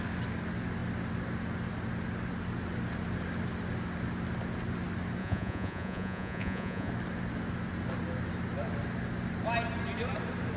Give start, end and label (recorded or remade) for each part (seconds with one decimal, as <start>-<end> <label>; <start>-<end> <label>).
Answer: 0.0-5.2 recorded; 5.2-6.9 remade; 6.9-10.6 recorded